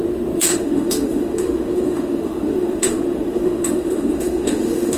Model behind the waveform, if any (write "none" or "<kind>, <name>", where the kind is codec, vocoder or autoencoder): autoencoder, DAC-VAE